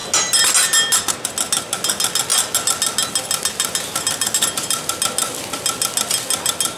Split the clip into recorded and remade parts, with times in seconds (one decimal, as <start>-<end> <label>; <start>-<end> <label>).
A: 0.0-6.8 recorded